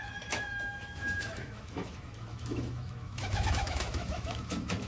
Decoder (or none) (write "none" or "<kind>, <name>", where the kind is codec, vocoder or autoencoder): autoencoder, DAC-VAE